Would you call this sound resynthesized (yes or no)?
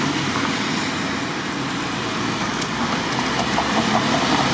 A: no